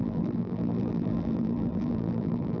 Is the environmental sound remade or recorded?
remade